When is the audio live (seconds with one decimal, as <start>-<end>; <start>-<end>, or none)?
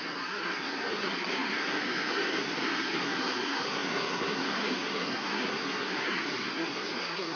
none